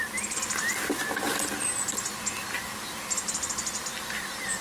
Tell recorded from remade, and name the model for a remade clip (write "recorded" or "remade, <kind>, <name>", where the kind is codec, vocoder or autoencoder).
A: recorded